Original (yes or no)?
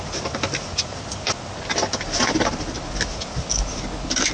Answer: yes